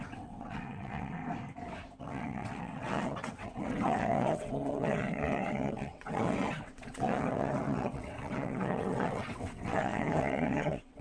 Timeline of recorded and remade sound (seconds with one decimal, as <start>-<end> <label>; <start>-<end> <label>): 0.0-1.2 remade; 1.2-2.0 recorded; 2.0-11.0 remade